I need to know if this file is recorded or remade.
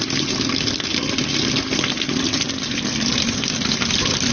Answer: recorded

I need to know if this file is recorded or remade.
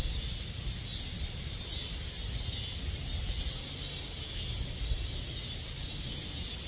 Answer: recorded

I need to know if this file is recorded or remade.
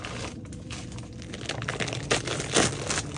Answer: recorded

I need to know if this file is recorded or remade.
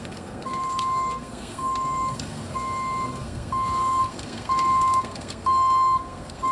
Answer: remade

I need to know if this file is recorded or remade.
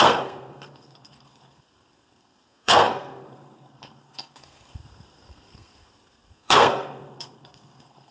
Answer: remade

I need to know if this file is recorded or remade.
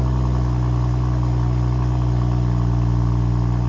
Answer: recorded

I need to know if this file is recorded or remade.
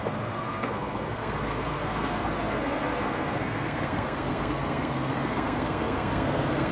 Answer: remade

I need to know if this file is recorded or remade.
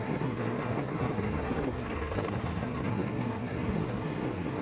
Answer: remade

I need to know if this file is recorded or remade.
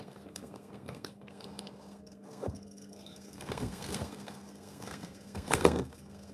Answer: remade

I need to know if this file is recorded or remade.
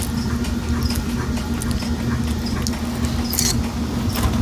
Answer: recorded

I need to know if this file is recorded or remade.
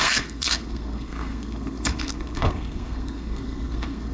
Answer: remade